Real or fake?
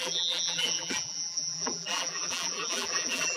fake